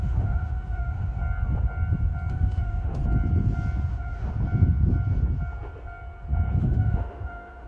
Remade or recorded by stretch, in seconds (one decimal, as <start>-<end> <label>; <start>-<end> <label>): 0.0-1.2 remade; 1.2-2.3 recorded; 2.3-3.0 remade; 3.0-3.9 recorded; 3.9-4.3 remade; 4.3-6.6 recorded; 6.6-7.7 remade